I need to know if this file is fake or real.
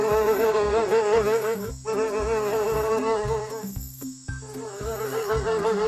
fake